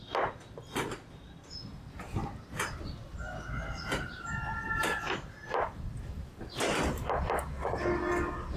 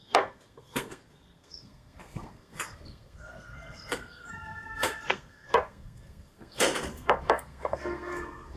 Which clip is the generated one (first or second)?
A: second